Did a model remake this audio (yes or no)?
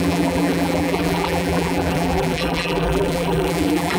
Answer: yes